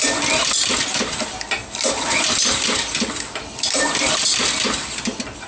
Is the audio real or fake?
real